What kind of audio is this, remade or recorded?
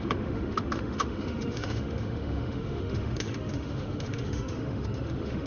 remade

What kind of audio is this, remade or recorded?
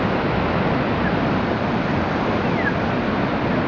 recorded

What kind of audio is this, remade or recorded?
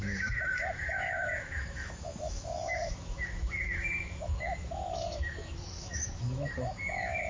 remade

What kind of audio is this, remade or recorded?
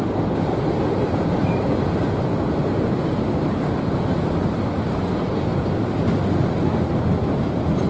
recorded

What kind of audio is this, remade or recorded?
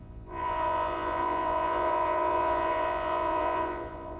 remade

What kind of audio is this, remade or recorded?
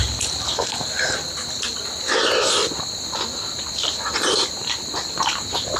recorded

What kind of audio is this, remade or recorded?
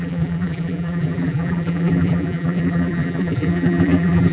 remade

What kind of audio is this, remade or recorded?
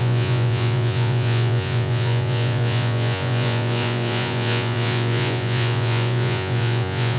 remade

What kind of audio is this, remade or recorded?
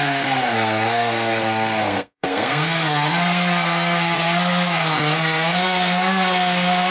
remade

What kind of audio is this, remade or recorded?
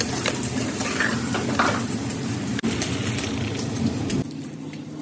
remade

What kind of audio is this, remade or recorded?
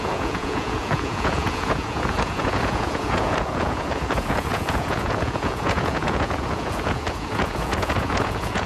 remade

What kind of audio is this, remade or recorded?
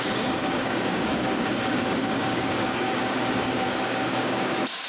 remade